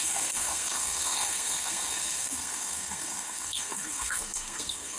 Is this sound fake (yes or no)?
yes